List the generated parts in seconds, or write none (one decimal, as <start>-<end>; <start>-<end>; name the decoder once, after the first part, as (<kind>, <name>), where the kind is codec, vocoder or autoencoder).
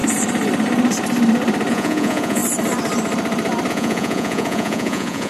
1.7-2.4 (vocoder, Vocos); 3.7-5.3